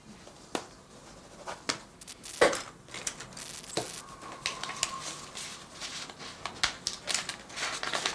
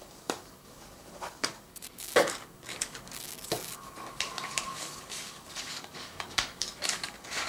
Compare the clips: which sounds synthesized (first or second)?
second